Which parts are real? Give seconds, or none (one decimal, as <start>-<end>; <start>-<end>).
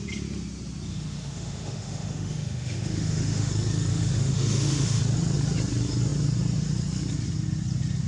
0.0-0.9; 3.5-3.9; 5.0-8.1